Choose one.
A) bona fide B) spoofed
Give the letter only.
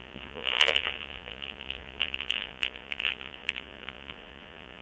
B